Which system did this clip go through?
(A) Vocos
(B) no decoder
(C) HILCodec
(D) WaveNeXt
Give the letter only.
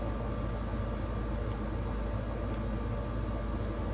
B